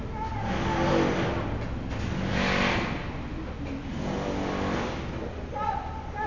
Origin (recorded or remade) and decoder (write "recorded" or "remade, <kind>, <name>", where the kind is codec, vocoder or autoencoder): recorded